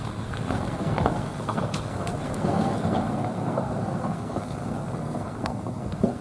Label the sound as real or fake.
fake